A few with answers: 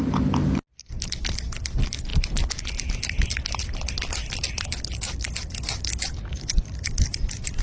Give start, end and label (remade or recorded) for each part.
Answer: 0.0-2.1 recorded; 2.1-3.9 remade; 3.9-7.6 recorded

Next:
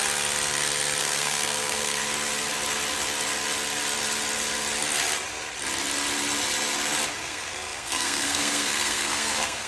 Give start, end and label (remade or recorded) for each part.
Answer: 0.0-1.0 recorded; 1.0-2.0 remade; 2.0-7.1 recorded; 7.1-9.7 remade

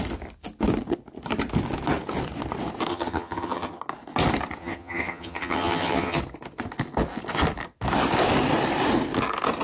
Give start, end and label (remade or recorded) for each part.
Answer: 0.0-2.9 recorded; 2.9-3.8 remade; 3.8-4.6 recorded; 4.6-6.2 remade; 6.2-9.6 recorded